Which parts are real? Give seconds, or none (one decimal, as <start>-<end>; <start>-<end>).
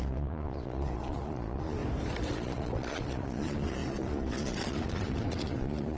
1.8-2.3